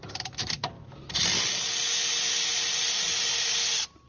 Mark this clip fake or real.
real